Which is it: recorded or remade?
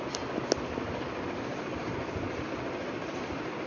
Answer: recorded